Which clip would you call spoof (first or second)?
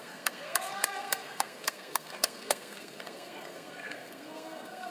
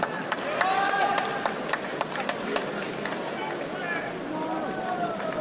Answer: first